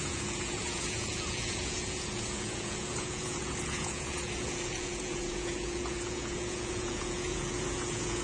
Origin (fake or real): fake